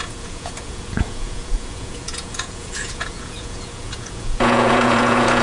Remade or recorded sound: remade